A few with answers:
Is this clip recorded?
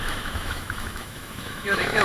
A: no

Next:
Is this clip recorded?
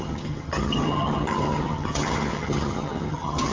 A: no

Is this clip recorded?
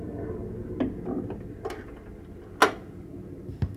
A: yes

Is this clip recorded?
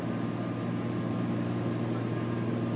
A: yes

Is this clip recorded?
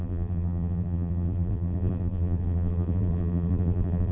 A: no